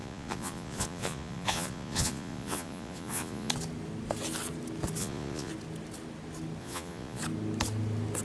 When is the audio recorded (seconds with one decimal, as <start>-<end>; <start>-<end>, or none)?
3.5-5.0; 5.5-6.6; 7.2-8.2